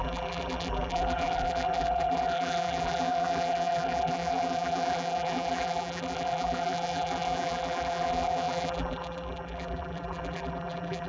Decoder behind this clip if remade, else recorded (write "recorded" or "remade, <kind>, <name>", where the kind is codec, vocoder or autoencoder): remade, vocoder, BigVGAN v2